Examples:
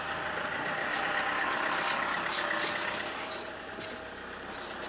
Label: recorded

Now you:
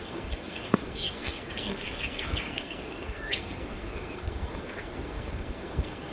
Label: remade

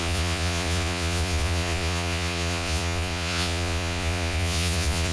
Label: remade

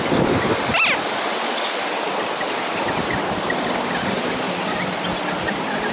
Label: recorded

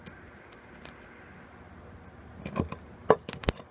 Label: recorded